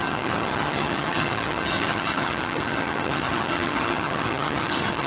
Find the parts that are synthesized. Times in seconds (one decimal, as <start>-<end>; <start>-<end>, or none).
0.0-5.1